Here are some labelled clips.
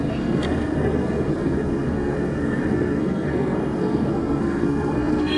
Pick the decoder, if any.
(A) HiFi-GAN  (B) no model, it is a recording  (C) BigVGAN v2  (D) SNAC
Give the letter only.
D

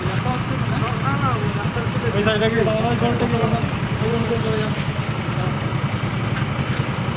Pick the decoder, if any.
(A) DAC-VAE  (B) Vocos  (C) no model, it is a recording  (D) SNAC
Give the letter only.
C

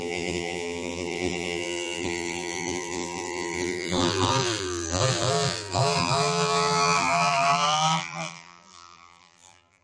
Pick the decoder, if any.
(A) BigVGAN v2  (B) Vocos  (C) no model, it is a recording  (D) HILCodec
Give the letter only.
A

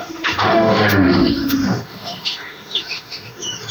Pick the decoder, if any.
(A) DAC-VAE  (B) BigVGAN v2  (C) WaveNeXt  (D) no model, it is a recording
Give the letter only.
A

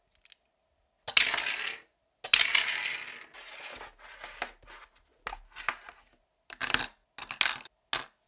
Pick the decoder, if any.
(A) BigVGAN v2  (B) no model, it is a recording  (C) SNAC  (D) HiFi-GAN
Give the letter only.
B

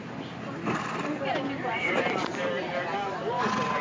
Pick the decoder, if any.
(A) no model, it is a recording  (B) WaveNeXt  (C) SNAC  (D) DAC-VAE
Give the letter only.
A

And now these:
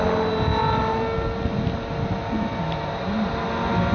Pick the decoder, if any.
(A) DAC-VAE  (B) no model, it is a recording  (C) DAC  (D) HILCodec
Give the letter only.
B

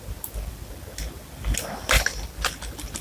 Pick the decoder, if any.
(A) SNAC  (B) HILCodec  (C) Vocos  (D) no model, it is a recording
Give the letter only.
D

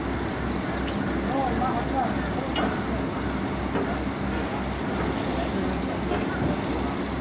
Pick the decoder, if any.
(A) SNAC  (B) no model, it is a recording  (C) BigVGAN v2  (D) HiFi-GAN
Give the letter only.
B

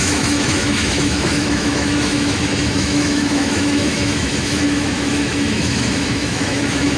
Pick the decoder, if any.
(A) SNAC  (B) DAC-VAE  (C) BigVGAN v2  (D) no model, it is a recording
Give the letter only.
B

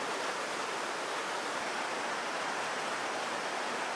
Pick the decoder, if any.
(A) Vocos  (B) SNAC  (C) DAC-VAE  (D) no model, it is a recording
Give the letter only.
D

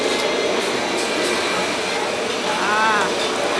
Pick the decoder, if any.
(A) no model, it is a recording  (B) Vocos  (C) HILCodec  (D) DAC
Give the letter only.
A